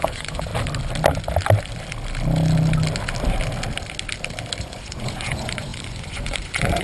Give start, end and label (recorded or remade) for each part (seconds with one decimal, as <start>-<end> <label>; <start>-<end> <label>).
0.0-0.5 remade; 0.5-4.6 recorded; 4.6-6.8 remade